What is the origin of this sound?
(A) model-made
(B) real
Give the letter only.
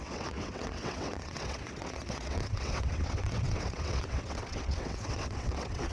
A